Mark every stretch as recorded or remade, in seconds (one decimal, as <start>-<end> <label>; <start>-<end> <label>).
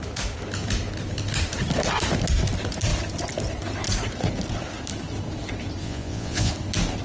0.0-5.8 recorded; 5.8-6.5 remade; 6.5-7.0 recorded